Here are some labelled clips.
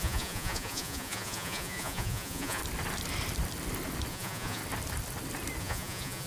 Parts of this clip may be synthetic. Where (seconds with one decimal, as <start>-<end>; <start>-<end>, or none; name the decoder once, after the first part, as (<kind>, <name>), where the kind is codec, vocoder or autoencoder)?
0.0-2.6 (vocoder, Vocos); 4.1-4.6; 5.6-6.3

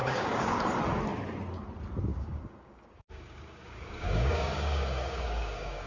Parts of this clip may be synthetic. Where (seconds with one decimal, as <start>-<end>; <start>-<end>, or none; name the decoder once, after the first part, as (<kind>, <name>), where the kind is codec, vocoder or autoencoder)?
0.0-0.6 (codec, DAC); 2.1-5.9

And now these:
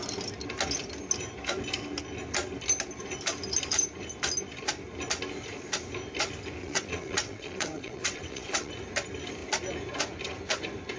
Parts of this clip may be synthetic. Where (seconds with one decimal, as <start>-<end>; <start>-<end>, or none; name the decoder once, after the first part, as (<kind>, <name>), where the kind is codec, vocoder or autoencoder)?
6.6-8.7 (vocoder, WaveNeXt)